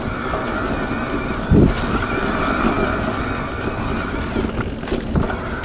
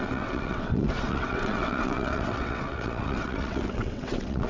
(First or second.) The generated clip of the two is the second